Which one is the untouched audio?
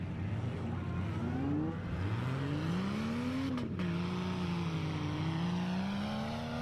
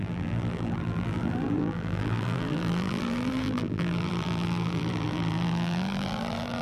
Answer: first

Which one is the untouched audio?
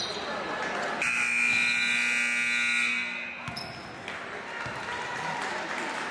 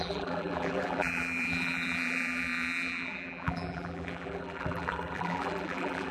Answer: first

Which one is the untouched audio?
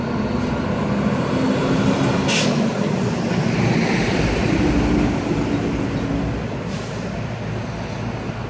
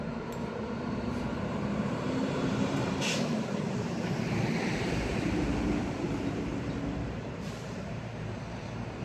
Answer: first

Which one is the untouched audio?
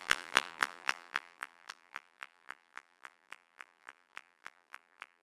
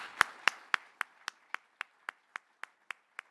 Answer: second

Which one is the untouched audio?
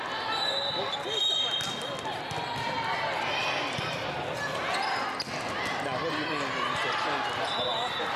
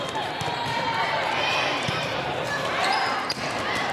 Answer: first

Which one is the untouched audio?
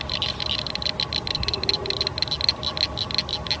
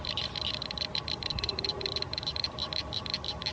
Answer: first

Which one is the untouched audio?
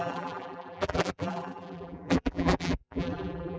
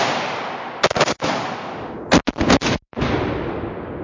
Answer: second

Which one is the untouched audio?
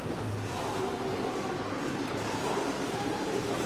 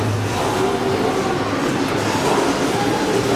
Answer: second